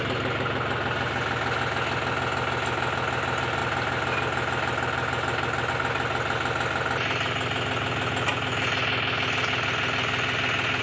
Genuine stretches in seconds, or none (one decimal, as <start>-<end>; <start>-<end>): 0.0-10.8